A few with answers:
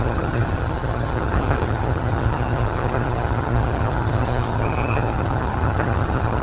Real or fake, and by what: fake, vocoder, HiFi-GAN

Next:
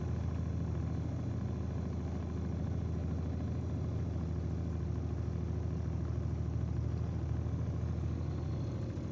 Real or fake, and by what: real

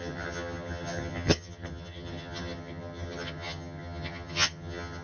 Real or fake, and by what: fake, vocoder, HiFi-GAN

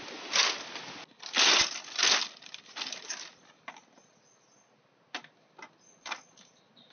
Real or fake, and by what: real